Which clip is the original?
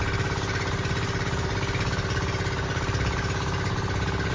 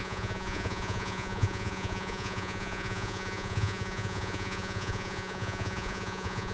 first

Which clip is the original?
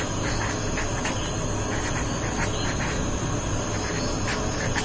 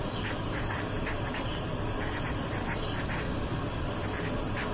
first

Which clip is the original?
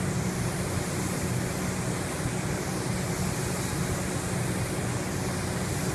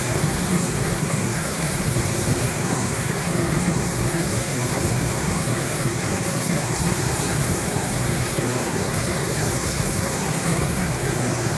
first